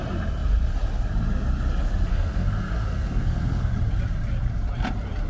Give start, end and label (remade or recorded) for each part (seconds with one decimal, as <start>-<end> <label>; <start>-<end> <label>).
0.0-2.1 recorded; 2.1-3.7 remade; 3.7-5.3 recorded